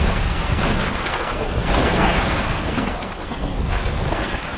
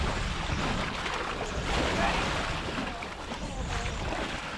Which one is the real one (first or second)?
second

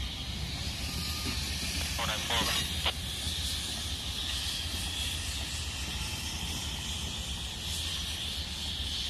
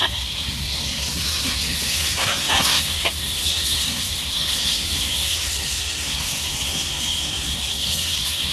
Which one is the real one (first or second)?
first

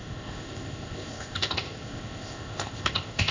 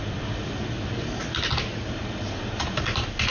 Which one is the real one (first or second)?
second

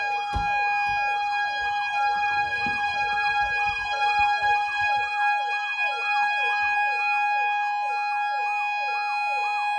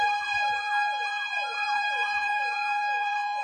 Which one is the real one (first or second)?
first